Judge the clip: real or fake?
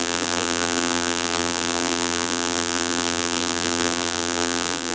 fake